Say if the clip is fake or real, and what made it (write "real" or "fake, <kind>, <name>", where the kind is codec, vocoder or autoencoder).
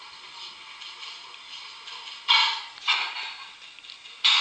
real